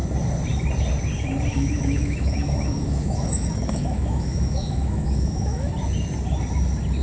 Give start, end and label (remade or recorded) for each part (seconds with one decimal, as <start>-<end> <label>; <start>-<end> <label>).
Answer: 0.0-1.5 recorded; 1.5-5.7 remade; 5.7-7.0 recorded